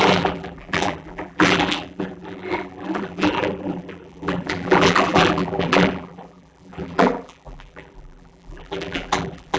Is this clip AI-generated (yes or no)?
yes